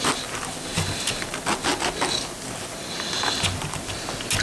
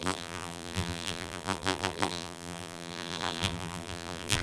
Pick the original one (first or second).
first